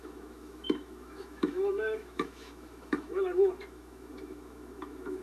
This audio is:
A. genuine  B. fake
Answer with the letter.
B